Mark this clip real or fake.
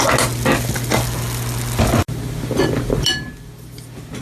real